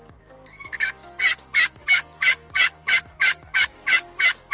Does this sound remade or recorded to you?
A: remade